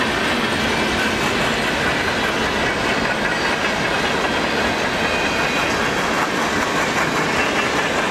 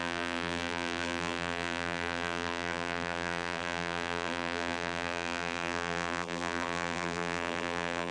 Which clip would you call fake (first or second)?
second